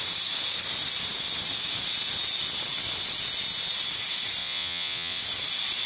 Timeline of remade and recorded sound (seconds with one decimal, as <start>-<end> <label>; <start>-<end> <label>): 0.0-4.4 recorded; 4.4-5.2 remade; 5.2-5.9 recorded